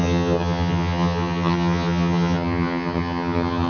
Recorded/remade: remade